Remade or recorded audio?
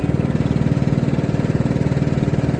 recorded